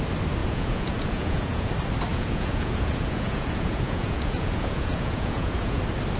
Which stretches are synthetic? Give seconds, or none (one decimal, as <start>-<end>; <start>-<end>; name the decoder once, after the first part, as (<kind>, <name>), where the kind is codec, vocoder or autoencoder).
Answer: 0.4-1.7 (vocoder, Vocos); 2.1-5.8